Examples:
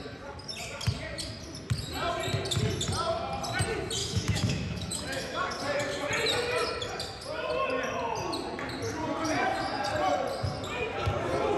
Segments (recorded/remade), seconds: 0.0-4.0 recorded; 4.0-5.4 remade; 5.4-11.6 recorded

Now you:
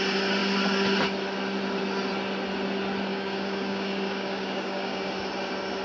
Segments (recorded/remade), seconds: 0.0-3.1 recorded; 3.1-5.1 remade; 5.1-5.8 recorded

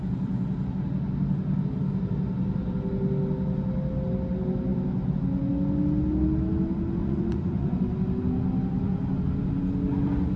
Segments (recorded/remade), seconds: 0.0-7.0 recorded; 7.0-7.8 remade; 7.8-10.4 recorded